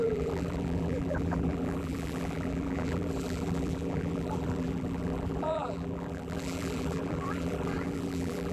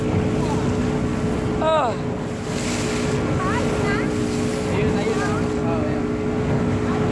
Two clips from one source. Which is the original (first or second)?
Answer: second